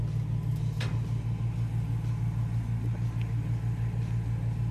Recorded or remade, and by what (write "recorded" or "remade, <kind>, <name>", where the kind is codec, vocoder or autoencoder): recorded